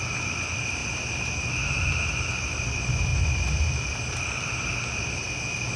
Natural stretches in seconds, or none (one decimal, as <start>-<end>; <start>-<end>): 0.0-5.8

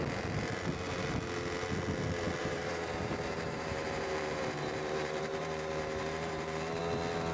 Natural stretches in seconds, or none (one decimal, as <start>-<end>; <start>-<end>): 0.0-2.4; 6.8-7.3

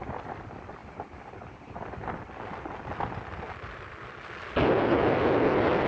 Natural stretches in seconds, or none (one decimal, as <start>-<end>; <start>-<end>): 0.0-5.9

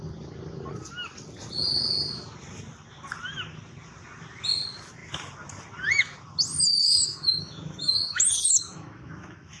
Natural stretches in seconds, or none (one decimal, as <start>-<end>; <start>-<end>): 0.0-6.8